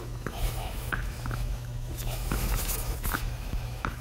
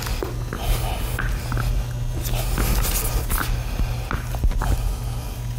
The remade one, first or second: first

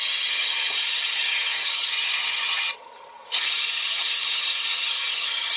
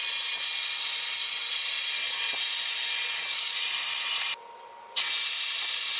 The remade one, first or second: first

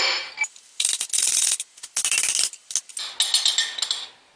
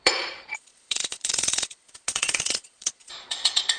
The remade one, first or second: second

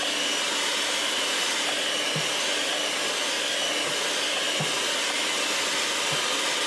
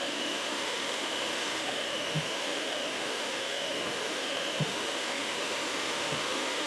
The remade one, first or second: second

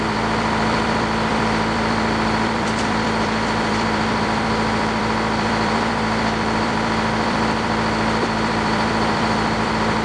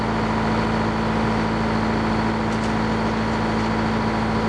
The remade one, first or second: first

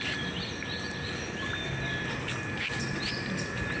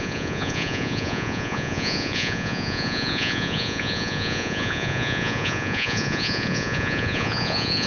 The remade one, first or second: second